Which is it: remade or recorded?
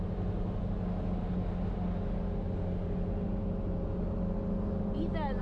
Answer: recorded